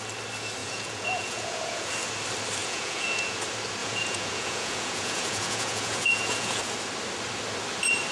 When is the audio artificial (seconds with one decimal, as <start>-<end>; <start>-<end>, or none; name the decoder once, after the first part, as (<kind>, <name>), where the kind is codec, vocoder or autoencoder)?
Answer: 0.6-1.9 (vocoder, Vocos); 2.6-3.4; 3.8-6.6